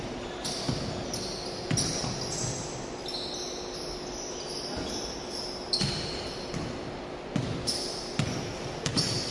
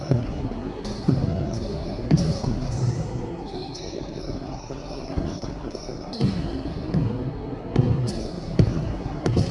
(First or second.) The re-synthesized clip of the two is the second